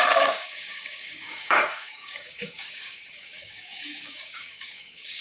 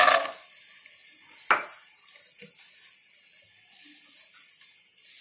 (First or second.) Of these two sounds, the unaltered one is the second